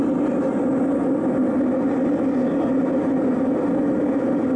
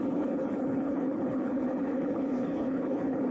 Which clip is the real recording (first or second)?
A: first